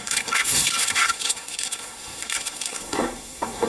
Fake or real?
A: fake